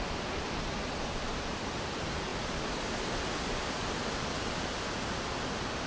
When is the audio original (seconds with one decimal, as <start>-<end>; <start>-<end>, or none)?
0.0-5.9